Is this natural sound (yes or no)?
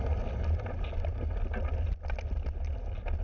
yes